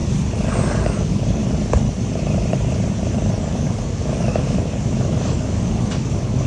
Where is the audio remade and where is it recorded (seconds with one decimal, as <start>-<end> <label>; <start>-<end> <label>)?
0.0-0.6 recorded; 0.6-1.4 remade; 1.4-3.4 recorded; 3.4-6.5 remade